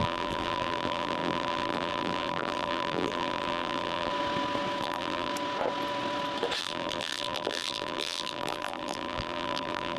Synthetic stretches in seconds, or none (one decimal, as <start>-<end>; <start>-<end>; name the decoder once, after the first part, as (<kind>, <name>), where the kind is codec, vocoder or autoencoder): 0.0-4.1 (vocoder, BigVGAN v2); 4.8-5.3; 6.6-10.0